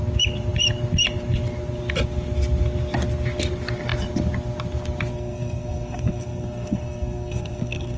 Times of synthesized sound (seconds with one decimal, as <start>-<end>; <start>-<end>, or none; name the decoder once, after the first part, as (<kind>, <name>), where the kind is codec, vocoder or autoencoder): 5.1-8.0 (codec, SNAC)